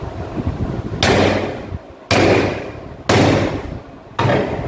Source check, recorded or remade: recorded